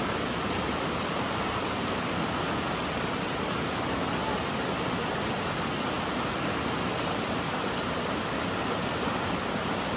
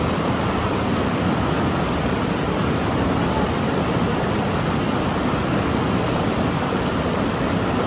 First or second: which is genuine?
first